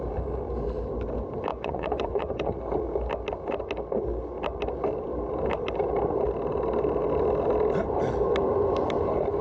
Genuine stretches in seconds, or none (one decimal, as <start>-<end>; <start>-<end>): 0.0-1.5; 2.5-9.4